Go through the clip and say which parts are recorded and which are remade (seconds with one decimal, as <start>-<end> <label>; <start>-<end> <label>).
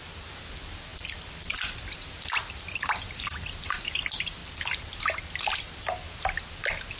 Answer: 0.0-0.9 recorded; 0.9-3.1 remade; 3.1-7.0 recorded